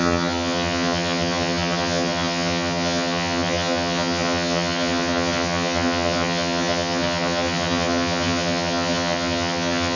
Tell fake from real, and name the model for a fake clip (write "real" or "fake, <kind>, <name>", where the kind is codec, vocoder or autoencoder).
fake, vocoder, HiFi-GAN